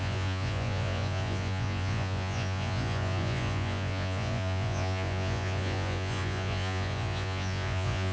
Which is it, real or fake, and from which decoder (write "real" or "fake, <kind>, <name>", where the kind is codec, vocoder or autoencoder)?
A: fake, vocoder, Vocos